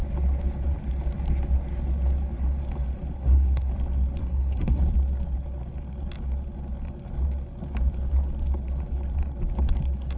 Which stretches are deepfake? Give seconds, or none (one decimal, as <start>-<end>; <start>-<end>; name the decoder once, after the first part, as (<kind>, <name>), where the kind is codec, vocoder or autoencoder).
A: 3.2-3.7 (codec, SNAC); 4.2-4.8